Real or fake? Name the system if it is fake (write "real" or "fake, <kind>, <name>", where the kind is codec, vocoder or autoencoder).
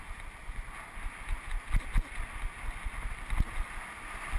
real